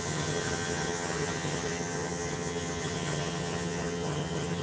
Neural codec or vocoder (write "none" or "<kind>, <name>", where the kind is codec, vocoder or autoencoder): vocoder, HiFi-GAN